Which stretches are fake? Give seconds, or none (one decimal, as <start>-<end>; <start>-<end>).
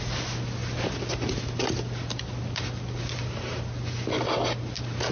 none